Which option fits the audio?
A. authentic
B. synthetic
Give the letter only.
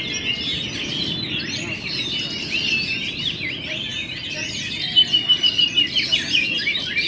A